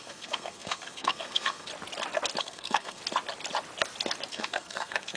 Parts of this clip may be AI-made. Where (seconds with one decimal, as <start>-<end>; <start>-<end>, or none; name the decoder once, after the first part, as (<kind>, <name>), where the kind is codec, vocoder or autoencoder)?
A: 0.0-1.7 (codec, SNAC); 2.4-3.0; 4.3-5.2

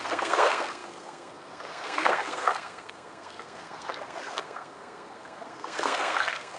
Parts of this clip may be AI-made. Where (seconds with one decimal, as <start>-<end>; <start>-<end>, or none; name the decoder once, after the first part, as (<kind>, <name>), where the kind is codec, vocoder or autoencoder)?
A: 0.0-6.6 (codec, SNAC)

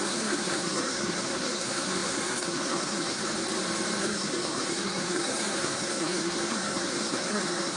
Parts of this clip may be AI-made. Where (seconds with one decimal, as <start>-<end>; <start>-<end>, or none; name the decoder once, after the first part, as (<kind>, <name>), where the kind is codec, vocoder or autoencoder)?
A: 0.0-3.2 (codec, SNAC); 4.0-7.8

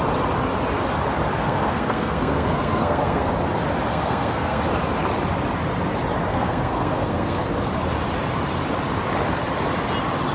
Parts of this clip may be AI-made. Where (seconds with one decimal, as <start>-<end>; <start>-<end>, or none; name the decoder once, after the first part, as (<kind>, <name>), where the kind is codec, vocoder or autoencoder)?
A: 1.4-3.3 (codec, SNAC); 3.9-4.6; 6.3-7.4

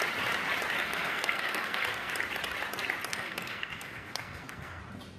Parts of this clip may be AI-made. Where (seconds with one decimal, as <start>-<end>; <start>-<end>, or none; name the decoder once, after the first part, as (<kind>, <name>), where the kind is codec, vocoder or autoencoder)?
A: 0.8-2.1 (codec, SNAC); 3.1-4.8

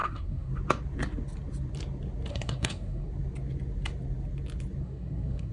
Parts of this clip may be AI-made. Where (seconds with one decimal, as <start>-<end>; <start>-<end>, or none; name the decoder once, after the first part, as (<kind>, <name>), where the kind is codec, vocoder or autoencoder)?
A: 0.0-0.5 (codec, SNAC); 2.3-3.1; 4.8-5.5

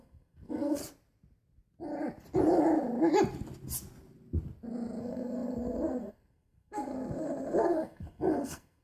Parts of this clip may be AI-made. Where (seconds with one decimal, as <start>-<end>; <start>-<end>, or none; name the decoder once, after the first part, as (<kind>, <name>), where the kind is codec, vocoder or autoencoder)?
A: 0.0-0.8 (codec, SNAC); 5.0-8.8

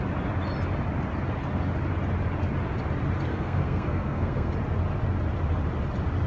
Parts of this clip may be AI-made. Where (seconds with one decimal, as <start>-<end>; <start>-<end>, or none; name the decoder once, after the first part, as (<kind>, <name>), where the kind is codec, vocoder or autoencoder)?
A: 3.3-4.5 (codec, SNAC)